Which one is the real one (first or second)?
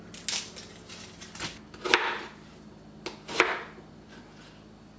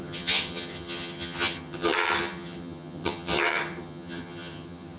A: first